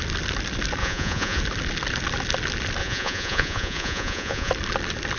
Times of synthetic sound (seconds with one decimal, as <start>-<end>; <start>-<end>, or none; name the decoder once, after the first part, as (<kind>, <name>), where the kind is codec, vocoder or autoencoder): 0.8-1.4 (vocoder, Vocos); 2.8-4.5